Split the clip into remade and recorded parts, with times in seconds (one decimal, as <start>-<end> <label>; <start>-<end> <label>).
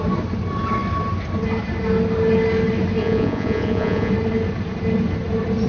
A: 0.0-3.0 recorded; 3.0-4.1 remade; 4.1-5.7 recorded